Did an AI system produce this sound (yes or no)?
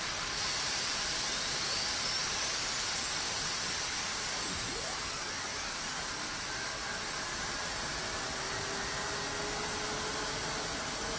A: no